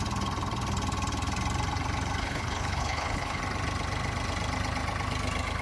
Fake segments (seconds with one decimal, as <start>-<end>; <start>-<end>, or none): 2.2-3.4